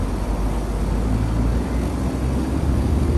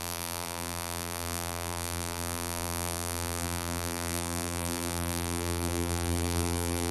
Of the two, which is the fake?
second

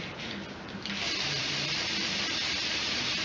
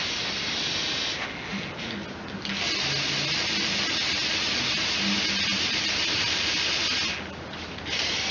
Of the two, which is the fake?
first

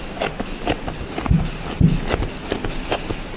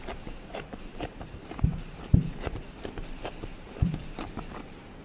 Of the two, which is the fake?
second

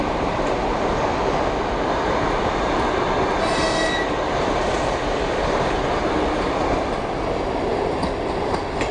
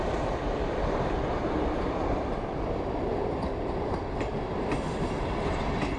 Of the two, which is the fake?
second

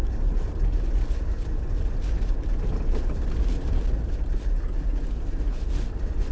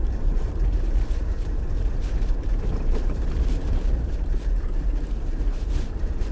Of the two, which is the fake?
second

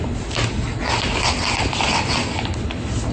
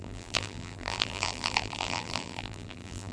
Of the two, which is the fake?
second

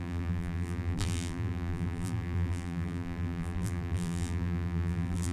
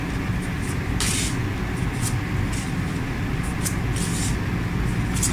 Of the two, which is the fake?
first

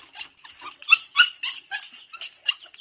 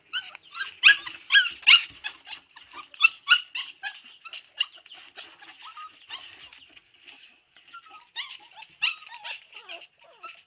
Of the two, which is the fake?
first